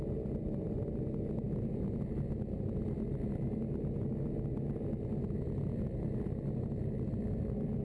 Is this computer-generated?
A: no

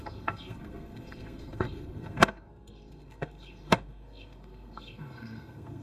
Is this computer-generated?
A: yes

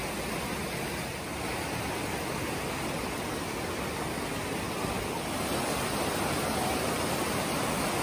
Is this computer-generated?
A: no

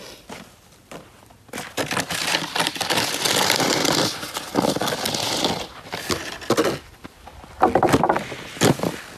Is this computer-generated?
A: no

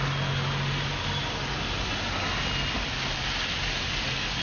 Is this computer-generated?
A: no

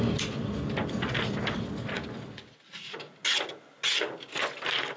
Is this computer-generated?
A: no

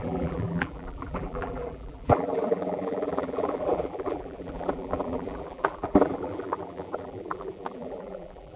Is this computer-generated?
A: yes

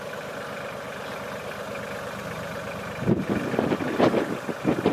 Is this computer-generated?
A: no